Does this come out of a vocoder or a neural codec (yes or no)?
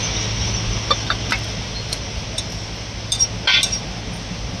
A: no